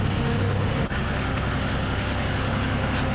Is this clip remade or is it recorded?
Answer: remade